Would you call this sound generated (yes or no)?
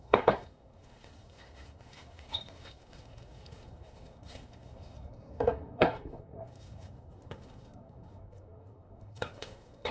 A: yes